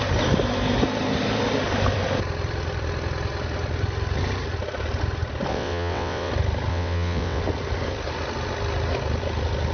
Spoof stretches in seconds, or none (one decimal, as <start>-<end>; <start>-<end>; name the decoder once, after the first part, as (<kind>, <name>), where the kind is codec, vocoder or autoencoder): 5.5-6.3 (vocoder, WaveNeXt); 6.7-7.4